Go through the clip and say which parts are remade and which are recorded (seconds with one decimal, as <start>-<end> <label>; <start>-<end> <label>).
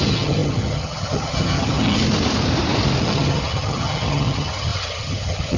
0.0-2.0 remade; 2.0-3.0 recorded; 3.0-5.6 remade